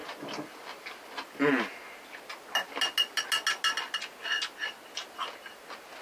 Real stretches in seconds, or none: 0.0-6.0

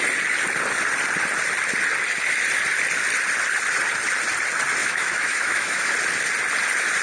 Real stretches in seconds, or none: 0.0-4.8; 5.9-7.0

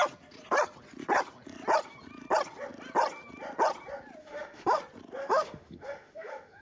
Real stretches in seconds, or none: 0.0-4.2; 4.8-5.2